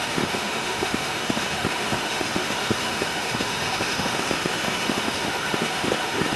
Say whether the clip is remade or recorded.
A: remade